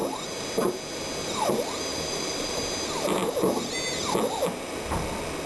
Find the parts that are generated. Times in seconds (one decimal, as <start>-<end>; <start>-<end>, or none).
1.9-2.6